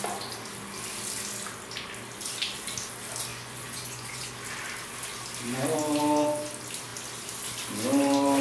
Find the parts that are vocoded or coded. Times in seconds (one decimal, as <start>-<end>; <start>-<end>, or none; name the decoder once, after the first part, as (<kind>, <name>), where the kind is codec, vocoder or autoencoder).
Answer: 3.3-4.3 (vocoder, Vocos)